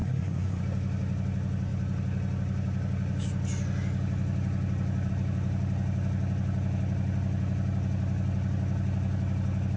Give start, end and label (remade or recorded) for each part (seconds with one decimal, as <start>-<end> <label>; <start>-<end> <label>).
0.0-0.6 remade; 0.6-9.8 recorded